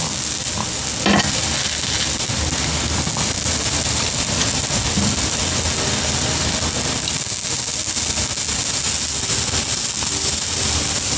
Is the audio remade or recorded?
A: recorded